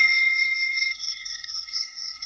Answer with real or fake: fake